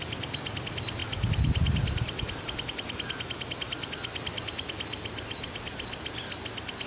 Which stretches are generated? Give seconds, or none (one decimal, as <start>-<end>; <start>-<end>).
none